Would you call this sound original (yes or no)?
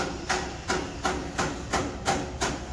yes